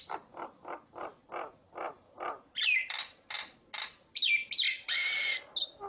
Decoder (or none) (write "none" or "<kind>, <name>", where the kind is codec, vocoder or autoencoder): none